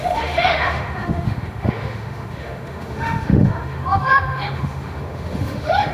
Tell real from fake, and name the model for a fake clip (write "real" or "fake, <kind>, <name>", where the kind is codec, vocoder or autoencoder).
fake, autoencoder, DAC-VAE